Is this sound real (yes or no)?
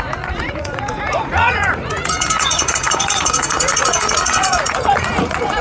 no